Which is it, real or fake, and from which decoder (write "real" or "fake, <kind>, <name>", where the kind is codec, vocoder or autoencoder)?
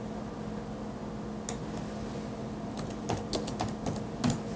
real